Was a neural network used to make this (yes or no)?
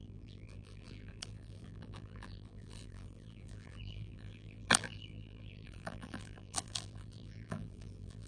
yes